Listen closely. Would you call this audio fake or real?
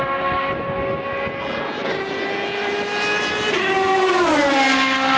real